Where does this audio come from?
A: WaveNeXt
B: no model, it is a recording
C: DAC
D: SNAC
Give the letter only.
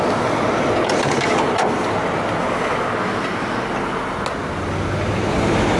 B